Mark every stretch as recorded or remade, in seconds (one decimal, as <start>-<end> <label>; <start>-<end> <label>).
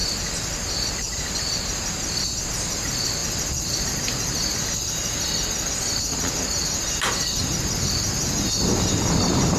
0.0-1.2 recorded; 1.2-3.2 remade; 3.2-3.8 recorded; 3.8-4.4 remade; 4.4-9.2 recorded; 9.2-9.6 remade